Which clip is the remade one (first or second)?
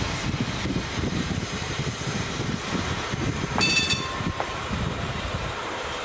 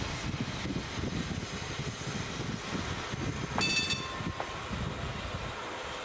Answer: first